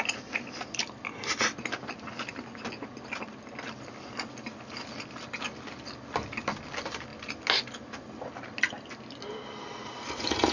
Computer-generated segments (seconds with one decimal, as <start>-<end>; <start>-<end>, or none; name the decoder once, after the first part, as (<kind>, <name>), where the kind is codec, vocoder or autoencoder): none